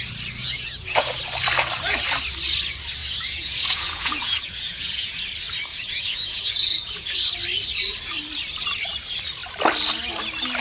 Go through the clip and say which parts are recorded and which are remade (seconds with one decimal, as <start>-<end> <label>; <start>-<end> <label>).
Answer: 0.0-0.4 recorded; 0.4-1.1 remade; 1.1-3.0 recorded; 3.0-5.2 remade; 5.2-5.7 recorded; 5.7-7.1 remade; 7.1-10.6 recorded